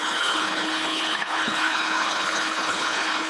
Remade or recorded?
remade